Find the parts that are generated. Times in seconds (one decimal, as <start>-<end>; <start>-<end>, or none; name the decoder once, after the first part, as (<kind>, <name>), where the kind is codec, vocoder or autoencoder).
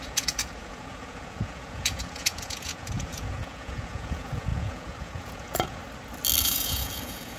0.0-5.8 (vocoder, Vocos); 6.4-7.4